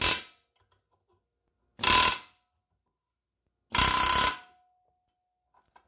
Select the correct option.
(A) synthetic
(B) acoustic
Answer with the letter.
B